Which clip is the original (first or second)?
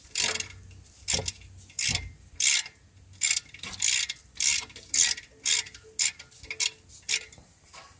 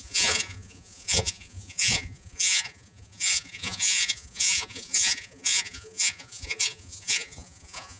first